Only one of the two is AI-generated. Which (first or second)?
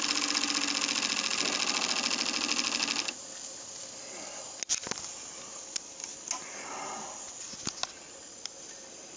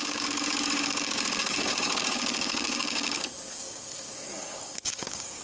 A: second